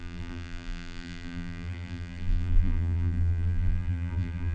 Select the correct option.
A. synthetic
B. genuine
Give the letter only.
A